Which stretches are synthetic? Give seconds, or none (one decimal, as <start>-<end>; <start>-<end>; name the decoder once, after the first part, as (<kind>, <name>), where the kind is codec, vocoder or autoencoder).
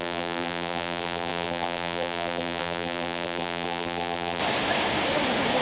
0.0-4.4 (vocoder, BigVGAN v2)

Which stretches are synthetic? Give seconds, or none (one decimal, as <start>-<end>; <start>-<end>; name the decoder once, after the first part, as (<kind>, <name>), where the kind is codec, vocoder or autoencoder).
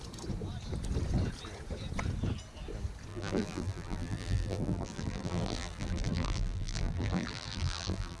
3.1-8.2 (vocoder, BigVGAN v2)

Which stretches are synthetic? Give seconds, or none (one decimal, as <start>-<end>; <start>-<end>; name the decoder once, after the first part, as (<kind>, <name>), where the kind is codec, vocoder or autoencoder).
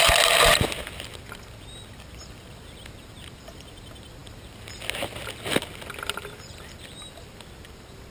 none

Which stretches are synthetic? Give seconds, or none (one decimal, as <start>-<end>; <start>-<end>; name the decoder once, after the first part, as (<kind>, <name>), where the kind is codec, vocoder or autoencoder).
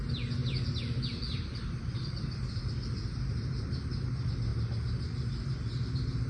0.4-3.0 (vocoder, BigVGAN v2)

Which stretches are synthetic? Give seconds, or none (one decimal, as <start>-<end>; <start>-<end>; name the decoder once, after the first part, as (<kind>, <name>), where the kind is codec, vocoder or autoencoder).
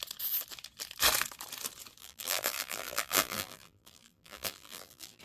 2.0-5.2 (vocoder, BigVGAN v2)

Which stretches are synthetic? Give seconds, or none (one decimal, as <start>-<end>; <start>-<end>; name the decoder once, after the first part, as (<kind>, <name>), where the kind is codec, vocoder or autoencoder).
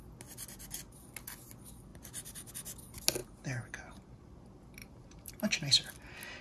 1.9-2.5 (vocoder, BigVGAN v2); 3.2-4.2; 4.8-5.3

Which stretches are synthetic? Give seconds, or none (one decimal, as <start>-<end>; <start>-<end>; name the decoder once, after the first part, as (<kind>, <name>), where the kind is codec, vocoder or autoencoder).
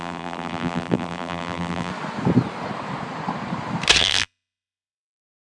0.0-1.9 (vocoder, BigVGAN v2); 4.0-5.4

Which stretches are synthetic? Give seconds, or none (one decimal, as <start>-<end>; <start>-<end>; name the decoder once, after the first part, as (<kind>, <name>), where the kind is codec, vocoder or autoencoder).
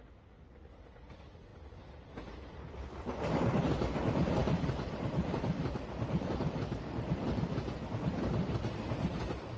4.4-7.5 (vocoder, BigVGAN v2)